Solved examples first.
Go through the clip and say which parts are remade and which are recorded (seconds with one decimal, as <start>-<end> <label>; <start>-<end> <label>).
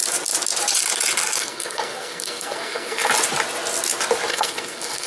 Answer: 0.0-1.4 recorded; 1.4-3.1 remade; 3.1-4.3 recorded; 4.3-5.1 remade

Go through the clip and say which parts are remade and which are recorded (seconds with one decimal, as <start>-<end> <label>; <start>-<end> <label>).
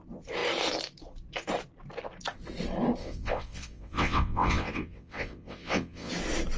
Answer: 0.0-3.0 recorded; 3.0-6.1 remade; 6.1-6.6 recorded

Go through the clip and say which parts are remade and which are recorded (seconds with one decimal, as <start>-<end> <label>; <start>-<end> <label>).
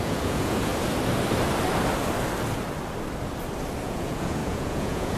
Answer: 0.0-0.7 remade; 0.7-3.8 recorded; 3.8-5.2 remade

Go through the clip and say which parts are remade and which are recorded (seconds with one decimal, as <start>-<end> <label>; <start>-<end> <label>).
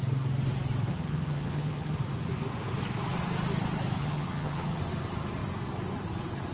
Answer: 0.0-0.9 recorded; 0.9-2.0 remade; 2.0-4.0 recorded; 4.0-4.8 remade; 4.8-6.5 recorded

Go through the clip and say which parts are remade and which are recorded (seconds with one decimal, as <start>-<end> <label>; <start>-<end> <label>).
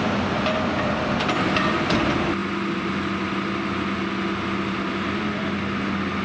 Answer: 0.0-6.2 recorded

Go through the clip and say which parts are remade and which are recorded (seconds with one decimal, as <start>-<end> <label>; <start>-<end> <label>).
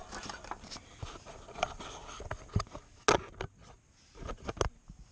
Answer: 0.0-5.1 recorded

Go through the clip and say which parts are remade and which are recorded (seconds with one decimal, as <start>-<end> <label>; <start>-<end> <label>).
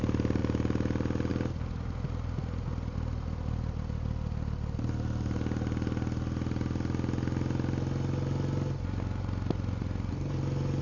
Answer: 0.0-10.8 recorded